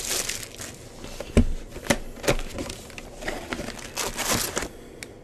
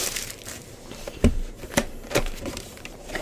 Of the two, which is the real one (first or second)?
first